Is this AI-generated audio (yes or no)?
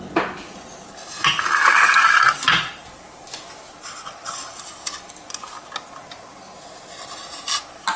no